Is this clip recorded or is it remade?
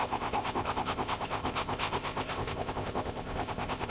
remade